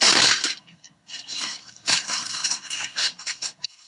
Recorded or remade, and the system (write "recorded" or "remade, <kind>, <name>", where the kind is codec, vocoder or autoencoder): remade, codec, SNAC